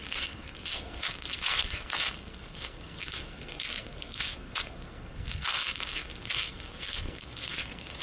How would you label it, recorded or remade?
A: remade